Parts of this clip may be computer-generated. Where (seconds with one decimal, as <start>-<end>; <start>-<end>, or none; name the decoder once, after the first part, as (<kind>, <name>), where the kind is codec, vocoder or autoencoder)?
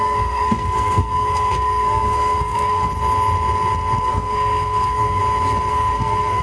0.0-2.9 (codec, SNAC); 4.0-5.2; 5.7-6.4